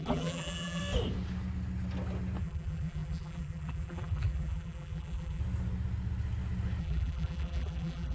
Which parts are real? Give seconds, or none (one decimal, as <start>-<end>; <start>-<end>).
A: 0.8-2.4; 5.4-6.8